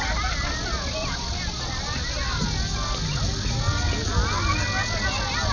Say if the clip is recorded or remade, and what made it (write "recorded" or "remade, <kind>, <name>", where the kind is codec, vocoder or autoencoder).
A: recorded